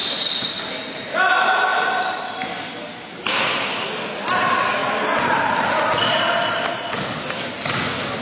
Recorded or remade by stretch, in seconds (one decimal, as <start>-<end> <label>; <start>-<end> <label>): 0.0-0.6 remade; 0.6-1.7 recorded; 1.7-2.2 remade; 2.2-8.2 recorded